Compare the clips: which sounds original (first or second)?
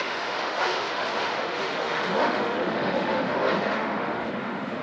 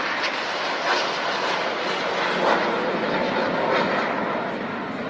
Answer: second